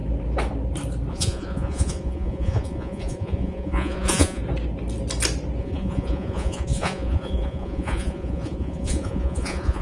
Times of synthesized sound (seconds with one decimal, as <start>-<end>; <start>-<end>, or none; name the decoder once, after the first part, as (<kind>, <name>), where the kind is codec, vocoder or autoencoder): 1.1-4.4 (vocoder, Vocos); 5.6-9.8